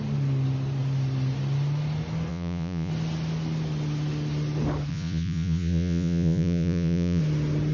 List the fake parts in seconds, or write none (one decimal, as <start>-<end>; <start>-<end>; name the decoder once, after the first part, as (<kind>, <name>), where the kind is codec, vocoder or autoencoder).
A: 2.3-2.9 (vocoder, Vocos); 4.9-7.2